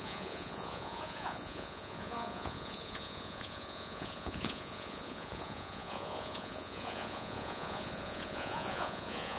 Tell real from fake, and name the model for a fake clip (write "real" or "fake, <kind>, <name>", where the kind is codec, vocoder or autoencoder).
fake, vocoder, Vocos